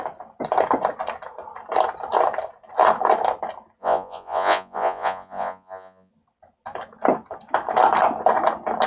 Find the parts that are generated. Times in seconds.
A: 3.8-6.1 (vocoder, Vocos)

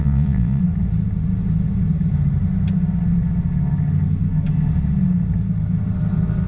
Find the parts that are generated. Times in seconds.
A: 0.0-0.6 (vocoder, Vocos)